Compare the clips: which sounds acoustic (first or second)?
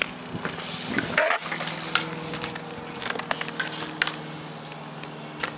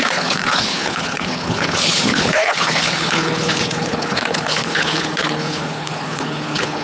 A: first